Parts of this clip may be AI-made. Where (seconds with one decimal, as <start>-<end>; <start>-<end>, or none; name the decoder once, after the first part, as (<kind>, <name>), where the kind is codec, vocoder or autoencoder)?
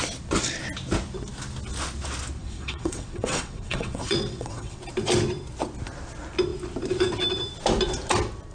2.4-4.8 (vocoder, WaveNeXt)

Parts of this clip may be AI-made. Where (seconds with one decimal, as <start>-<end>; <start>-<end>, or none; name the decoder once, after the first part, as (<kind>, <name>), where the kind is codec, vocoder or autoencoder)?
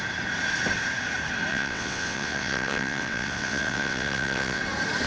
1.5-4.6 (vocoder, WaveNeXt)